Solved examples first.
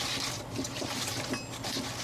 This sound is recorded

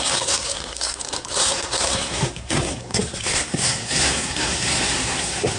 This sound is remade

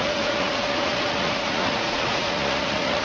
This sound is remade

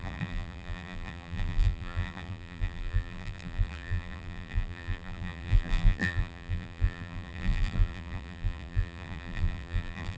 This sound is remade